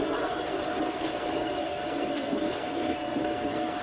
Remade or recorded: remade